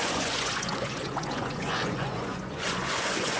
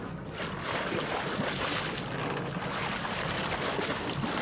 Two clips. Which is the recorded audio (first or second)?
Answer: second